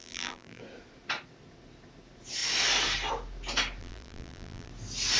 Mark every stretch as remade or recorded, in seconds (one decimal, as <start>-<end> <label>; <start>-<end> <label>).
0.0-0.6 remade; 0.6-3.8 recorded; 3.8-4.7 remade; 4.7-5.2 recorded